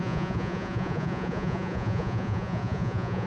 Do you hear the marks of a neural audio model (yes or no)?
yes